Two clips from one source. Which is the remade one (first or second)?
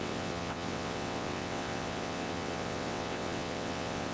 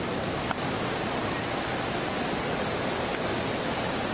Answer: first